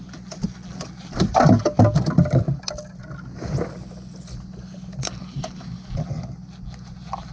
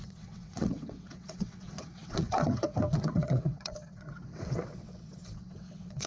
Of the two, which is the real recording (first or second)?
first